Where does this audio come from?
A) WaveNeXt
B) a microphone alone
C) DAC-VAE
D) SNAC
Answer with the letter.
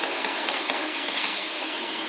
D